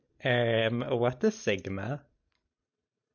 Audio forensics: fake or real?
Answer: fake